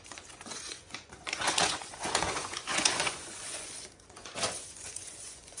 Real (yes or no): no